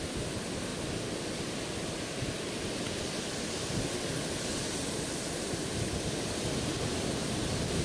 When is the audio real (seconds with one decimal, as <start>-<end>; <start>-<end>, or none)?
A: 0.0-7.8